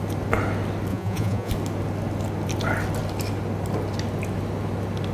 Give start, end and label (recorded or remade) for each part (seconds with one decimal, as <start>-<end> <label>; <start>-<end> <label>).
0.0-0.9 recorded; 0.9-1.5 remade; 1.5-5.1 recorded